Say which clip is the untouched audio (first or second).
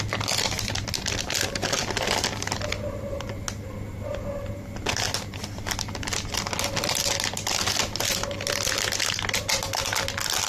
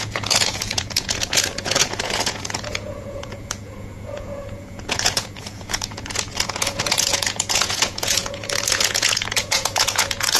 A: first